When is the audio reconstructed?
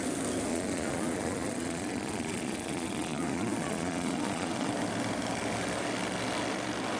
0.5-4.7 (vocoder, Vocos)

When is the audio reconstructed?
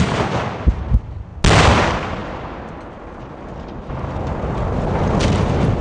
none